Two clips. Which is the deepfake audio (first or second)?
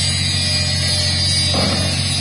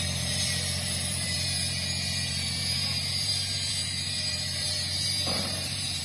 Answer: second